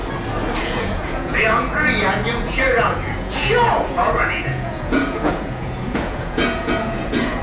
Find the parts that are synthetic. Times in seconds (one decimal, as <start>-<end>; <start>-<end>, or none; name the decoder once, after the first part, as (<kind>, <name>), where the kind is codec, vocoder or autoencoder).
0.6-7.4 (vocoder, Vocos)

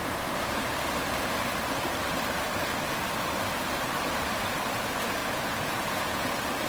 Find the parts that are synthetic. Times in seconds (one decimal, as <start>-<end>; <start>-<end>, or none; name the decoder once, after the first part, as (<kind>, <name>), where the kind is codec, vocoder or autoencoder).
5.2-6.3 (vocoder, Vocos)

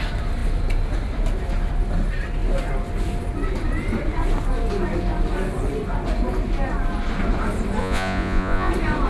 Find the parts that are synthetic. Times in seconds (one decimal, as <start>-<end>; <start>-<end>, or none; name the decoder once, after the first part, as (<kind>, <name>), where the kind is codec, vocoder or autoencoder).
7.8-8.7 (vocoder, Vocos)